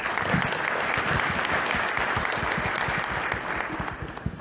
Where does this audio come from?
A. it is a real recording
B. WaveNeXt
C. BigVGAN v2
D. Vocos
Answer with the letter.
A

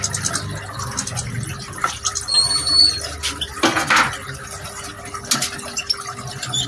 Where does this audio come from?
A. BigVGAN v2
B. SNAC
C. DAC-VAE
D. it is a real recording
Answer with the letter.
D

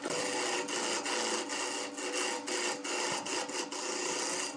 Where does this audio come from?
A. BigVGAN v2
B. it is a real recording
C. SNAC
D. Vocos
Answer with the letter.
B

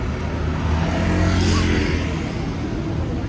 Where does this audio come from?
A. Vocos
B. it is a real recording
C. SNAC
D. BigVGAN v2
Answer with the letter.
B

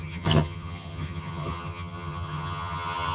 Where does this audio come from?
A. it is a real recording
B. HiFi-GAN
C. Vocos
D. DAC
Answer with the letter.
B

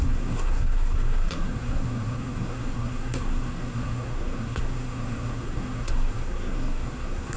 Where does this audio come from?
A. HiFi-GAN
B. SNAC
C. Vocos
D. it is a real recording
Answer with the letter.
B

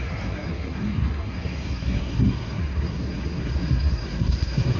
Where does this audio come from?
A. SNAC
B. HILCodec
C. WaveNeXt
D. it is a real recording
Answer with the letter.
A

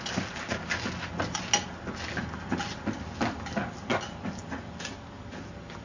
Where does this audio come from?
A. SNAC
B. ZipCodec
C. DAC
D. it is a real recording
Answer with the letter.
D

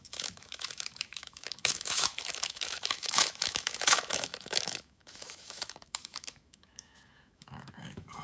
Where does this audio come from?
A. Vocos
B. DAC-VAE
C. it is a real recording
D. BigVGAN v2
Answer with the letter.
B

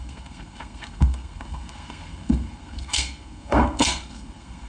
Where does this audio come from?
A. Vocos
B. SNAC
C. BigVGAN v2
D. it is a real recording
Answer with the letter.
B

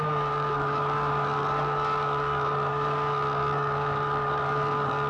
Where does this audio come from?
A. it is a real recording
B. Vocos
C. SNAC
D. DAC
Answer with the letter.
D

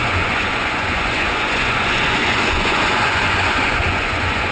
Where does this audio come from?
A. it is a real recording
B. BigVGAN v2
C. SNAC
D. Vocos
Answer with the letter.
D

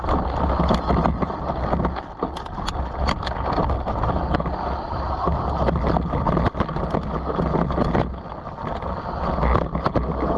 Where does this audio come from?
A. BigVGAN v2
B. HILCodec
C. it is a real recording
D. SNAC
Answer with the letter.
C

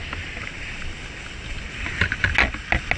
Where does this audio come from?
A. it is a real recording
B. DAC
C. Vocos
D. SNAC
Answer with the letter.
A